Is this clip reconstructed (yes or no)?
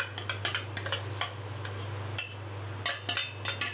no